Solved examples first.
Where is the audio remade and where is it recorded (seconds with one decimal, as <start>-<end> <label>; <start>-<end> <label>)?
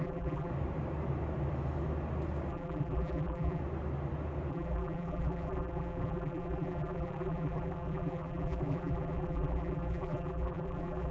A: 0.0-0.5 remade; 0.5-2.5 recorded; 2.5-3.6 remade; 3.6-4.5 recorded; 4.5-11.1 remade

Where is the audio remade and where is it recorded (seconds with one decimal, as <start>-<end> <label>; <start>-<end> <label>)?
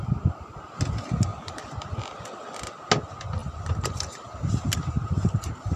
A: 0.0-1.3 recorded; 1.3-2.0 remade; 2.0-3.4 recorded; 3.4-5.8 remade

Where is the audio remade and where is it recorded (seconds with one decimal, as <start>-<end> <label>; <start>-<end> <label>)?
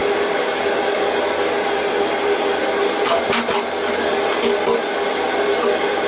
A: 0.0-6.1 recorded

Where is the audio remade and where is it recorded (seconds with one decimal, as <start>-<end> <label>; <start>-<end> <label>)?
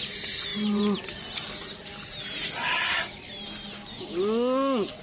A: 0.0-0.5 recorded; 0.5-1.1 remade; 1.1-5.0 recorded